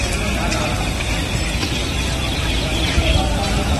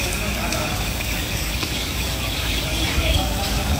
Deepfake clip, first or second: second